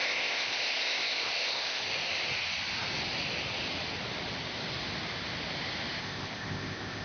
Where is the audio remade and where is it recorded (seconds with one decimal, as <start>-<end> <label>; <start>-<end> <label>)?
0.0-1.8 remade; 1.8-6.0 recorded; 6.0-7.0 remade